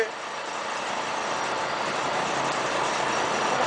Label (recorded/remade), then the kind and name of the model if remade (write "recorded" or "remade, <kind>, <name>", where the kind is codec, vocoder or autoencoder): recorded